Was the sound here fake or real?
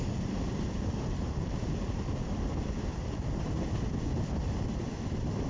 fake